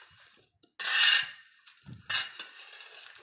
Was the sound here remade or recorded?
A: recorded